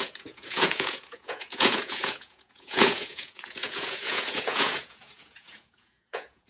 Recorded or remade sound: remade